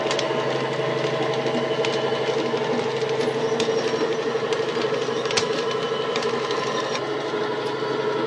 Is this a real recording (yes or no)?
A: yes